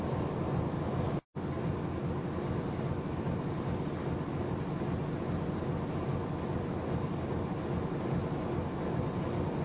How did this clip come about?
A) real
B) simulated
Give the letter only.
A